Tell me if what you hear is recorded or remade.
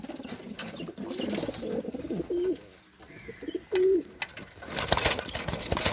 recorded